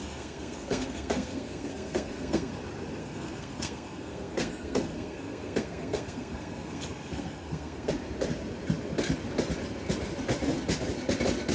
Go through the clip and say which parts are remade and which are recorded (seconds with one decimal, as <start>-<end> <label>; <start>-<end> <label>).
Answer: 0.0-2.5 remade; 2.5-3.0 recorded; 3.0-7.9 remade; 7.9-11.5 recorded